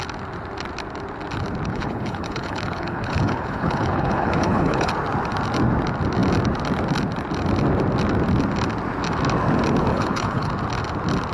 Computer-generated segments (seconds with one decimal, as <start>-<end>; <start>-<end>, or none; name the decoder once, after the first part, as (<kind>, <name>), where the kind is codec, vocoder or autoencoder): 1.7-4.9 (codec, HILCodec); 9.9-10.5